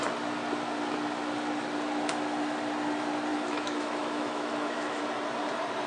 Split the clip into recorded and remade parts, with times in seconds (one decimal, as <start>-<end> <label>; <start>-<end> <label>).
0.0-3.3 recorded; 3.3-5.0 remade; 5.0-5.9 recorded